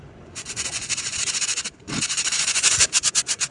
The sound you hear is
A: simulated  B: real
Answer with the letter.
A